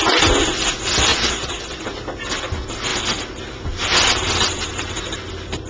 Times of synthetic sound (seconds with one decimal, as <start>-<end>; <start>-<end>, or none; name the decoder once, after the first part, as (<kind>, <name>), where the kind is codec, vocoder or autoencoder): 1.1-1.8 (vocoder, Vocos)